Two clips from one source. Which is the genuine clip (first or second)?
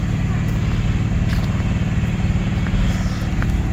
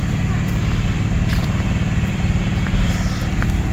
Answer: first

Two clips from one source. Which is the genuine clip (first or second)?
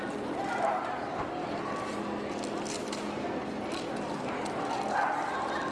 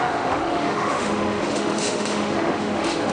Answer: first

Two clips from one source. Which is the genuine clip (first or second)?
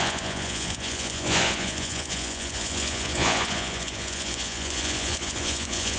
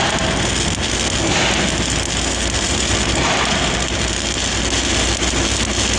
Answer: second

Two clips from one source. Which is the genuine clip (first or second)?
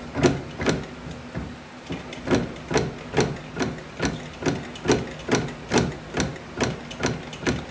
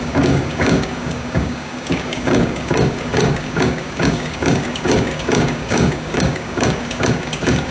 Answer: first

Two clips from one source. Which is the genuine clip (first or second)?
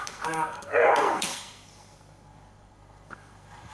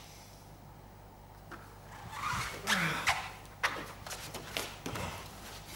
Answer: second